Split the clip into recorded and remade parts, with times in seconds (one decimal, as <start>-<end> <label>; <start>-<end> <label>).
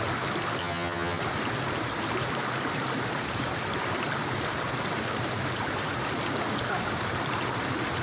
0.0-0.6 recorded; 0.6-1.2 remade; 1.2-8.0 recorded